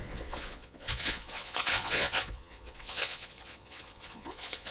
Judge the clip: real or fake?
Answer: fake